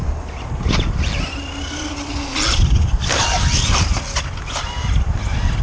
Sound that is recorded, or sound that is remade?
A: recorded